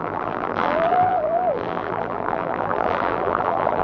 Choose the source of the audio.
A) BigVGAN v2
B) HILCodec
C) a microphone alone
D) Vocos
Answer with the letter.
A